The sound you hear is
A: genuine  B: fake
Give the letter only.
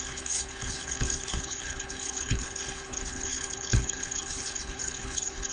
B